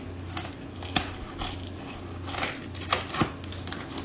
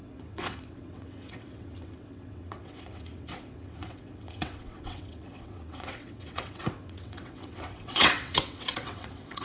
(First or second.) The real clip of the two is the first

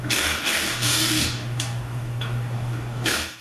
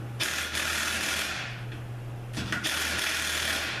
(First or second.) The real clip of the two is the second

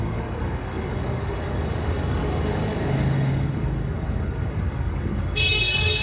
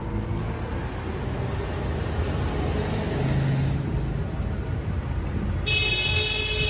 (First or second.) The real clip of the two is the second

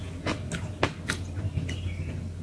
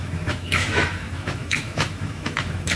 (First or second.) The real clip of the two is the first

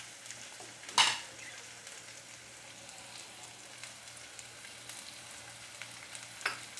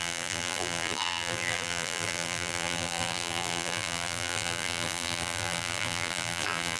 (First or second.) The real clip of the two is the first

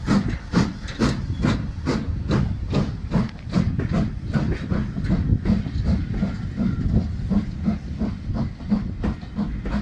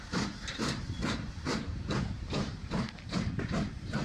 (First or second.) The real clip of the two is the first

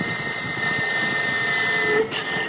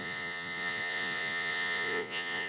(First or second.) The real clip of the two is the first